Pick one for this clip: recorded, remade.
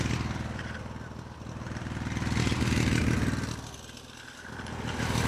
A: recorded